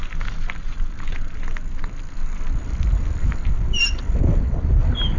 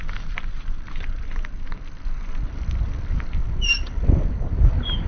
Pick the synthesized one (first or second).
second